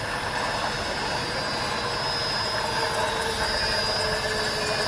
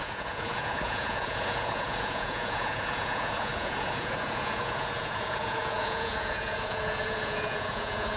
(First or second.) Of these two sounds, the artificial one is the second